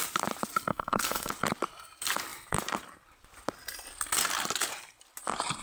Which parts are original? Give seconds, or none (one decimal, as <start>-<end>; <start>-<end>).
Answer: 0.0-0.7; 1.3-5.6